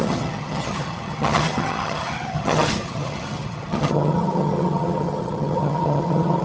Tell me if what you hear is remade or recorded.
remade